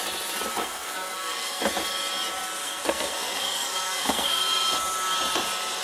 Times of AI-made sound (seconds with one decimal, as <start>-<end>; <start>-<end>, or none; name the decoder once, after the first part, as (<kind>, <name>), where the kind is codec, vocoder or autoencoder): 0.5-1.6 (codec, SNAC); 2.6-4.4

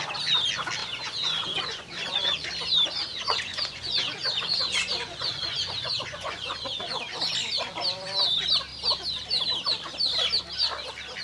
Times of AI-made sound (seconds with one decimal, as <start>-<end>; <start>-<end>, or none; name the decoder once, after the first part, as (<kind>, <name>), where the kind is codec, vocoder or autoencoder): 0.8-2.5 (vocoder, Vocos); 3.1-7.0